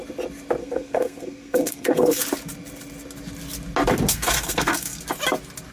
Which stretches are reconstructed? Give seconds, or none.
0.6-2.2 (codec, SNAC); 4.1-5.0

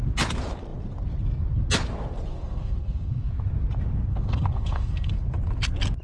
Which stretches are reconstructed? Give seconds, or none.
2.3-3.3 (codec, SNAC); 4.1-5.1

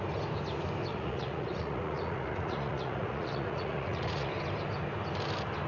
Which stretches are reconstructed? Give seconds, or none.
0.9-4.3 (vocoder, Vocos)

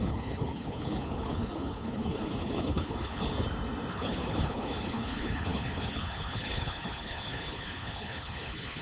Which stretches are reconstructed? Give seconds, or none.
0.0-3.3 (codec, HILCodec); 3.9-8.8

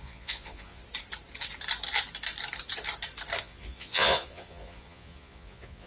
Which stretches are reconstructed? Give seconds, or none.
0.0-0.8 (vocoder, Vocos); 3.4-5.9

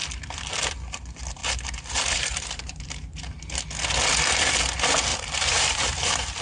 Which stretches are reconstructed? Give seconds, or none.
1.4-3.2 (vocoder, BigVGAN v2); 5.1-5.9

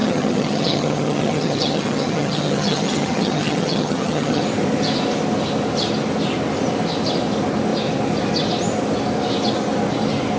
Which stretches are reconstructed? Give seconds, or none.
0.0-4.4 (vocoder, HiFi-GAN)

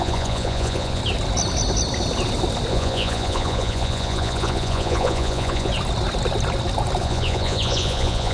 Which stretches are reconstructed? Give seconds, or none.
0.0-1.0 (vocoder, Vocos); 2.7-5.7; 7.0-8.3